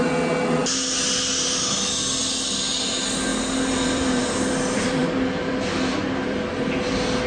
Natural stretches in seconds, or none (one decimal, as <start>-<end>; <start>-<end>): 0.0-3.3; 6.5-7.3